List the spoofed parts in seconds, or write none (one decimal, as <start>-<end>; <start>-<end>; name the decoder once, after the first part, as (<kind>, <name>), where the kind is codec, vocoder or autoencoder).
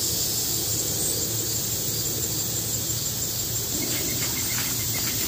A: none